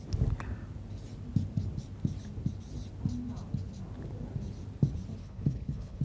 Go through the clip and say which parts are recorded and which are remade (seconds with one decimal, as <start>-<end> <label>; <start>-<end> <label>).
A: 0.0-5.2 recorded; 5.2-6.0 remade

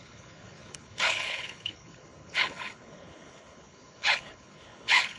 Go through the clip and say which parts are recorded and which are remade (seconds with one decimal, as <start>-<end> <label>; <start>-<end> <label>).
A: 0.0-5.2 remade

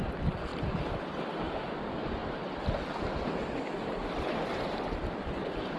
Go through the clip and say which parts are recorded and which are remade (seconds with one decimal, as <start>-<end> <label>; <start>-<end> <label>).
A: 0.0-5.8 recorded

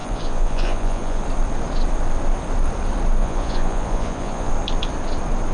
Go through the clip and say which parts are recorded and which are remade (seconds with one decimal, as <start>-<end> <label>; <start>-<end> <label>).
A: 0.0-1.2 remade; 1.2-3.2 recorded; 3.2-4.5 remade; 4.5-5.5 recorded

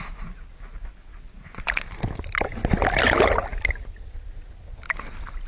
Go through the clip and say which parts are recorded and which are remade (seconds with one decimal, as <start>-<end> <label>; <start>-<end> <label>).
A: 0.0-5.5 recorded

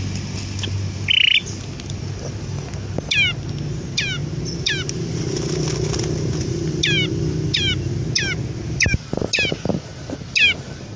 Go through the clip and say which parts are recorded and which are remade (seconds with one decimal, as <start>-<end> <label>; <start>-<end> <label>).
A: 0.0-11.0 recorded

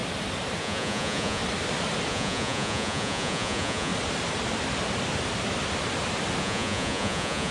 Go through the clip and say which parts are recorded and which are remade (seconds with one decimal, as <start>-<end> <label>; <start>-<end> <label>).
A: 0.0-0.6 recorded; 0.6-1.4 remade; 1.4-2.1 recorded; 2.1-3.9 remade; 3.9-6.4 recorded; 6.4-7.5 remade